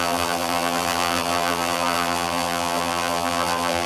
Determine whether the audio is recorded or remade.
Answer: remade